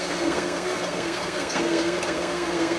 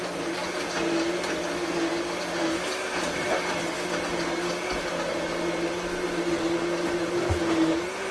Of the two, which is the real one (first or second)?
second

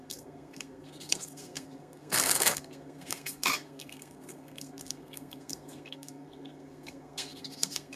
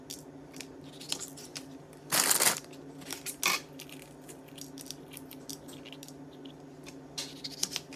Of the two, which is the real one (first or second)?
second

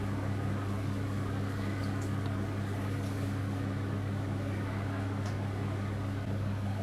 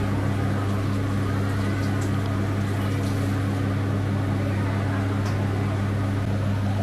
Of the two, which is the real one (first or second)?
second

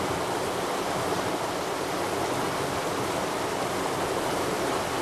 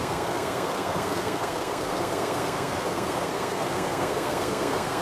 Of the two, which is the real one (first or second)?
first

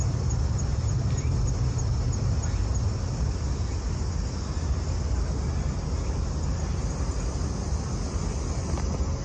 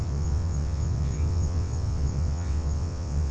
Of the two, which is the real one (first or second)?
first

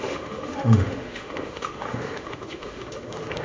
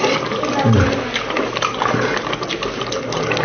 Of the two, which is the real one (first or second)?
second